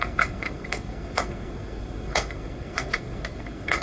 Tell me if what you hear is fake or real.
fake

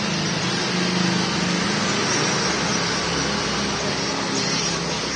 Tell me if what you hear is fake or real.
real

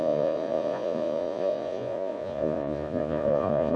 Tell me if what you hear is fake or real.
fake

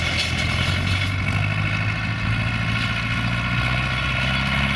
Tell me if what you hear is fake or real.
real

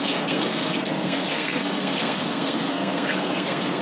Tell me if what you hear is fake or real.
fake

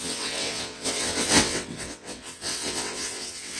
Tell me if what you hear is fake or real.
fake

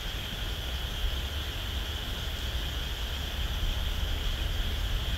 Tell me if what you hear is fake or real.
real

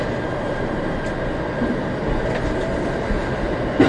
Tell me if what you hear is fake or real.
real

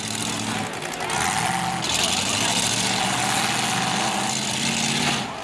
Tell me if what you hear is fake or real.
real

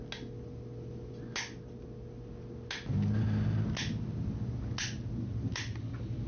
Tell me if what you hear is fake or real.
real